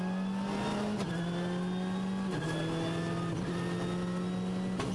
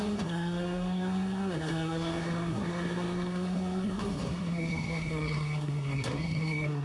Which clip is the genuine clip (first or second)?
first